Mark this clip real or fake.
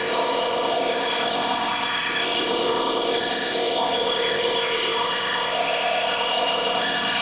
fake